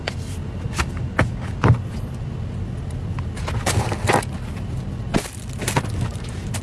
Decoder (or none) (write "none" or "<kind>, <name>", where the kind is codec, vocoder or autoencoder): none